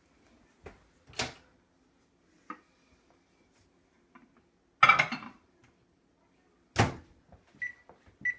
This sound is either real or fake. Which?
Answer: real